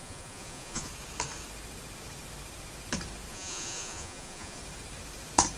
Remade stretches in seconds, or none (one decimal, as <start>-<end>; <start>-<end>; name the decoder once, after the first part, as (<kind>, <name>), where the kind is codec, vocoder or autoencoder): 0.0-0.9 (vocoder, Vocos); 3.3-4.6